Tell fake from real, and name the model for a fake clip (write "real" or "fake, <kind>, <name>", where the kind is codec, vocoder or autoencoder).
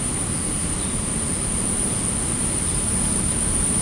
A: fake, vocoder, BigVGAN v2